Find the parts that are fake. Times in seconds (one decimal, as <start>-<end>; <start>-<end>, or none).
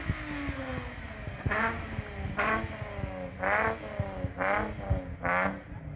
none